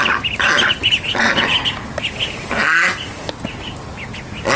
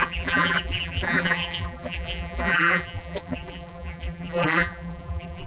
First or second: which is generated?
second